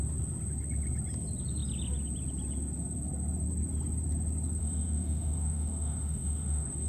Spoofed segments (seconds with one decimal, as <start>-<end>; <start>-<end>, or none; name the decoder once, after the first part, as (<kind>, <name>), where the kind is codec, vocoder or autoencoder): 4.6-6.9 (autoencoder, DAC-VAE)